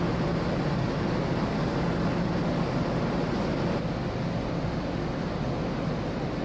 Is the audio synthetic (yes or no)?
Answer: no